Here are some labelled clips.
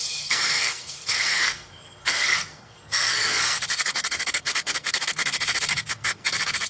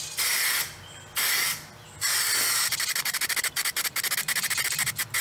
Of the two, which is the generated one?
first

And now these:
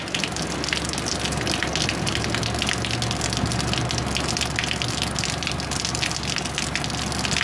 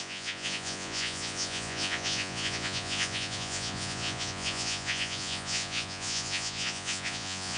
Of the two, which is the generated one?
second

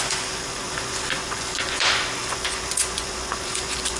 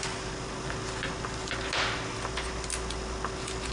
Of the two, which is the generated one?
first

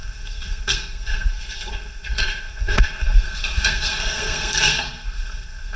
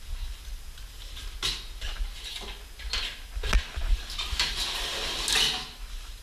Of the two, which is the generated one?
first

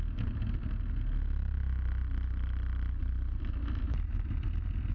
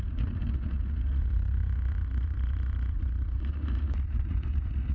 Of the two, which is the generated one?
second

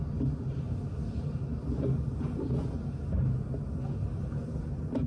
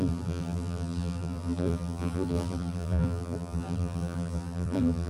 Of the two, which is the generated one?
second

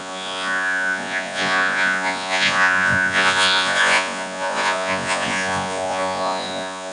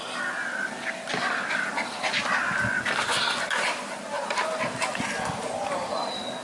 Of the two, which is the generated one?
first